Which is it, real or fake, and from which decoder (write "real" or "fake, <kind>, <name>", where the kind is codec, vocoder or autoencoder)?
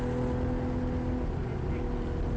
real